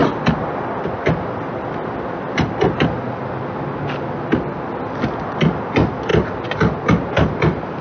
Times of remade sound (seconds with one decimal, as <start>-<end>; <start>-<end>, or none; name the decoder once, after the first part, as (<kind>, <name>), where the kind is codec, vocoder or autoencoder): none